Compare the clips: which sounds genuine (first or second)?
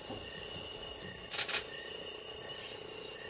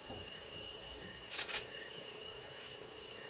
first